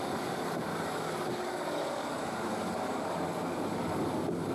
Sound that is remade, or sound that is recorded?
remade